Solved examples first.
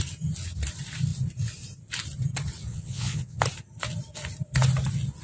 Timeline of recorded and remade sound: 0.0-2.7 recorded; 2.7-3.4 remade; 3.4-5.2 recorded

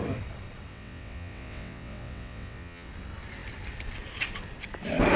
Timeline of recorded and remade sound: 0.0-0.7 recorded; 0.7-2.9 remade; 2.9-5.2 recorded

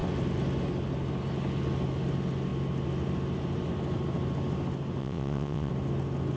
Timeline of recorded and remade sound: 0.0-5.0 recorded; 5.0-5.7 remade; 5.7-6.4 recorded

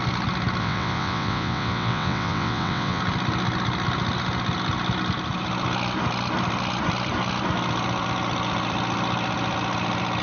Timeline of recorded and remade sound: 0.0-0.6 recorded; 0.6-3.0 remade; 3.0-10.2 recorded